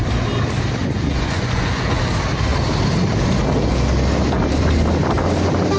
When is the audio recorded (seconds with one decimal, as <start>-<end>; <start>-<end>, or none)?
0.0-0.8; 2.0-5.8